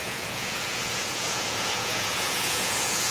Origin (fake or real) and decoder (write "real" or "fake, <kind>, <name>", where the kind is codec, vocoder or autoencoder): fake, vocoder, Vocos